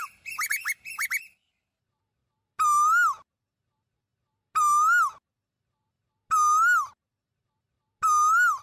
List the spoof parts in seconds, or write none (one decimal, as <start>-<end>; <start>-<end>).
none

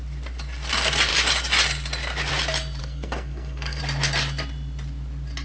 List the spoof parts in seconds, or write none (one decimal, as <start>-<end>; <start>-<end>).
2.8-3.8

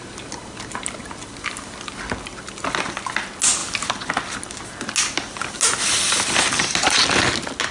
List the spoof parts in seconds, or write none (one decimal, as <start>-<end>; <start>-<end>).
none